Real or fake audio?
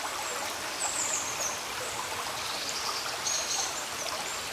real